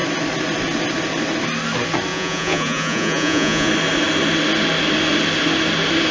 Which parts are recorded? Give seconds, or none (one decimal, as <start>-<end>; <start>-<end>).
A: 0.0-2.1; 3.7-6.1